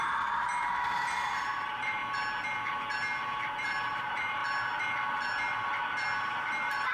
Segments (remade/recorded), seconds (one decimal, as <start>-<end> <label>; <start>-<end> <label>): 0.0-2.0 remade; 2.0-3.5 recorded; 3.5-4.4 remade; 4.4-6.3 recorded; 6.3-6.9 remade